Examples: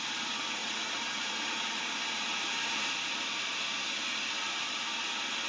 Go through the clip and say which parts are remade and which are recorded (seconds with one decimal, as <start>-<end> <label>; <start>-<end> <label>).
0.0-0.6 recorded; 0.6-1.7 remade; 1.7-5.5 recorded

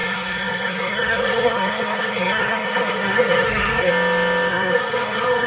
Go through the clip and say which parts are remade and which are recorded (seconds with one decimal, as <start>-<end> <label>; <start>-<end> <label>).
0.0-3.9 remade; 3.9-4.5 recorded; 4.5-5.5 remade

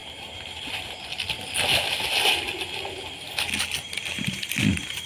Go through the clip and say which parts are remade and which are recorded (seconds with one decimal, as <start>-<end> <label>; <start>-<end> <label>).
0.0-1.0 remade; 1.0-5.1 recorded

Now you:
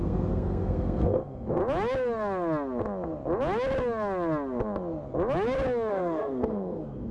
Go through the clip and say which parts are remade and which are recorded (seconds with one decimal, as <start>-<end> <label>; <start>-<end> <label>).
0.0-1.6 remade; 1.6-5.9 recorded; 5.9-7.1 remade

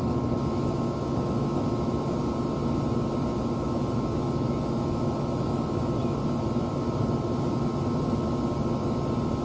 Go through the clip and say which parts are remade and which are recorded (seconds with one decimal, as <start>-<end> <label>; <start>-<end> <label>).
0.0-2.2 remade; 2.2-3.3 recorded; 3.3-5.8 remade; 5.8-9.4 recorded